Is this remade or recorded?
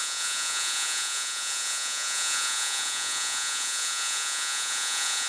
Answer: remade